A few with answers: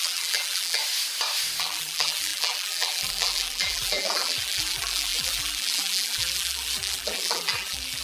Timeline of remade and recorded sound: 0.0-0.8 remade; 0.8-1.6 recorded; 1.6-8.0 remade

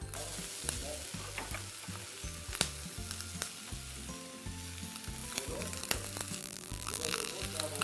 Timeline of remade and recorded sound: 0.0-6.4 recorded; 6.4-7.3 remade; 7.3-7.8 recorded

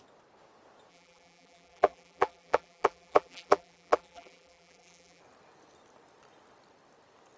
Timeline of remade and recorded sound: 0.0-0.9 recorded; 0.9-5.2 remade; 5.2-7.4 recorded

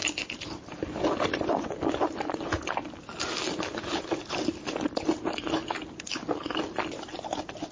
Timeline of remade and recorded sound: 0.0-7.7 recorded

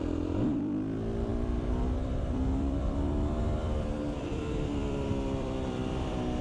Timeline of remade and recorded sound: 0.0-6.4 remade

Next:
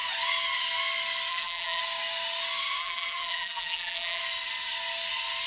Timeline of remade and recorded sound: 0.0-1.3 recorded; 1.3-1.8 remade; 1.8-2.8 recorded; 2.8-4.2 remade; 4.2-5.5 recorded

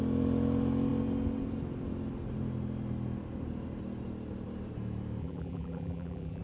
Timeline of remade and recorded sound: 0.0-5.2 recorded; 5.2-6.4 remade

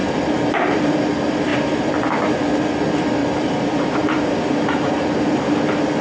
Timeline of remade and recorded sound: 0.0-1.1 remade; 1.1-3.2 recorded; 3.2-5.6 remade; 5.6-6.0 recorded